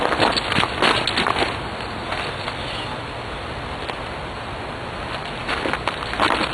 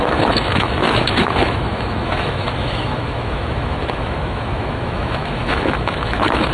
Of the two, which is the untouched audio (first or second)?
first